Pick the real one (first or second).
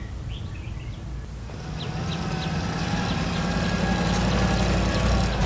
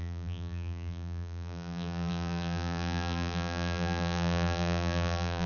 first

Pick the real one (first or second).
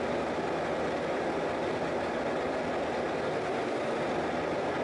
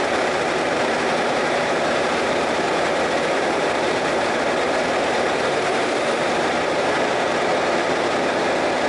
first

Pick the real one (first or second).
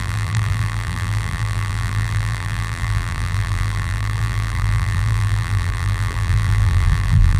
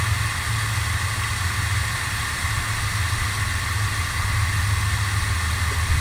second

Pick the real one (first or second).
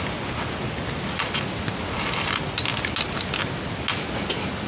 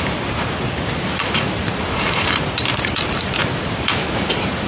first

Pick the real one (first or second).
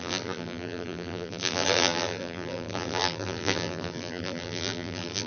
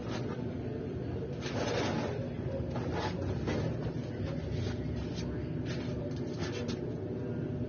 second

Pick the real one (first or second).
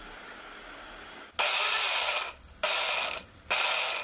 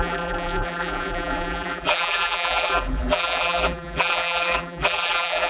first